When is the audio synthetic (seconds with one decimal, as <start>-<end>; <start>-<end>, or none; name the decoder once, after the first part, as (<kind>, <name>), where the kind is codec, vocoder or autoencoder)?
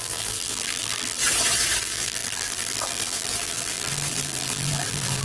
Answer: 0.0-1.2 (vocoder, BigVGAN v2); 1.8-5.2